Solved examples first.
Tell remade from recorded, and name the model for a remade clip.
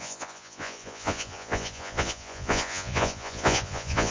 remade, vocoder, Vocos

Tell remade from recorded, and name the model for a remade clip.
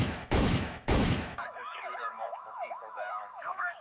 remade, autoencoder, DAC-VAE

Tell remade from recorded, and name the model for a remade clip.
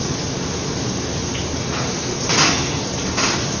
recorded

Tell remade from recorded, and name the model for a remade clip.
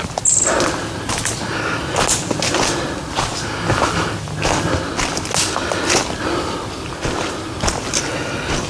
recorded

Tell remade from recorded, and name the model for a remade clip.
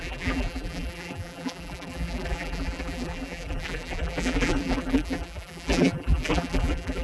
remade, vocoder, BigVGAN v2